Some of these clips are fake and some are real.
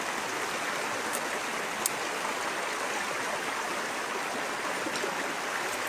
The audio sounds real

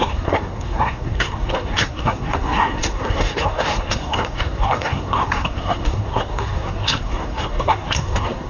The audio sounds fake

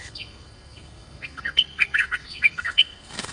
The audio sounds fake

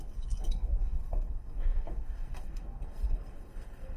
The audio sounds fake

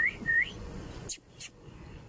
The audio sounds fake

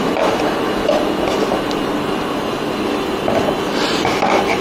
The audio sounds real